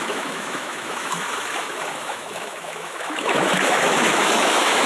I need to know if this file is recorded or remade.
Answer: remade